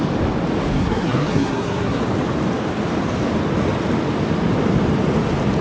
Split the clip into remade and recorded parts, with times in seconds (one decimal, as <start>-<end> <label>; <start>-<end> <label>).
0.0-0.7 recorded; 0.7-2.0 remade; 2.0-5.6 recorded

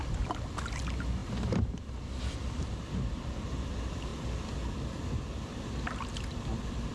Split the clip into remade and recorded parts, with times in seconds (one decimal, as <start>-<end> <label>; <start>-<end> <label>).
0.0-1.2 recorded; 1.2-2.2 remade; 2.2-6.9 recorded